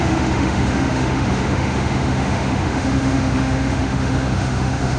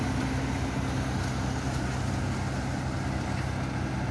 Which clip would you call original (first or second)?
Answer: second